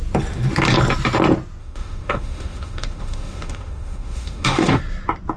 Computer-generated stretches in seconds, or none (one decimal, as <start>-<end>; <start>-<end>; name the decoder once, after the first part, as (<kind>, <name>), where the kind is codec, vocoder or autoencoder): 1.6-4.8 (autoencoder, DAC-VAE)